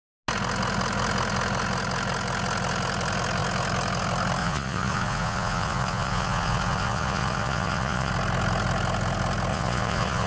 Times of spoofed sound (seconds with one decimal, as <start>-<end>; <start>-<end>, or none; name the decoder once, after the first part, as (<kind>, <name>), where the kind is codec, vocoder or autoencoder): 4.4-8.1 (vocoder, Vocos); 9.5-10.3